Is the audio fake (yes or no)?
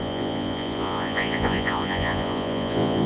yes